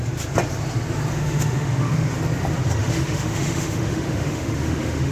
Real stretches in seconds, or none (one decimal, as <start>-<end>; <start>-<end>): 0.0-1.1; 2.1-2.8